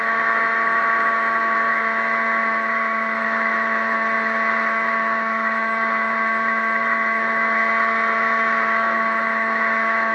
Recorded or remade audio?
remade